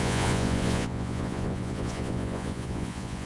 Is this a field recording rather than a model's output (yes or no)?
no